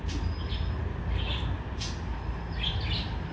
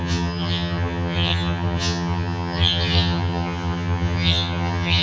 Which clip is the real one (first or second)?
first